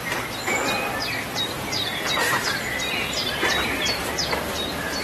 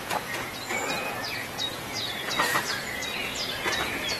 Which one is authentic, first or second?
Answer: first